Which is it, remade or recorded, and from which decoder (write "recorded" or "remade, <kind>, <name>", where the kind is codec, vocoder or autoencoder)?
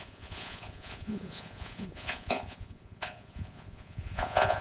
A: remade, vocoder, Vocos